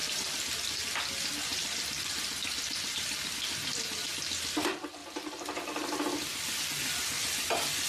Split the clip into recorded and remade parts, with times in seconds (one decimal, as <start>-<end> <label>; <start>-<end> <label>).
0.0-0.6 remade; 0.6-5.0 recorded; 5.0-6.6 remade; 6.6-7.9 recorded